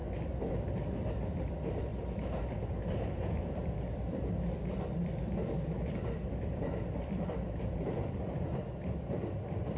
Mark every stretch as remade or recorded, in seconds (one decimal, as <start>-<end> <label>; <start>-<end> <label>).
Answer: 0.0-0.5 recorded; 0.5-1.9 remade; 1.9-2.7 recorded; 2.7-9.8 remade